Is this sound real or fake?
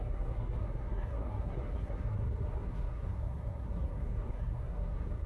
fake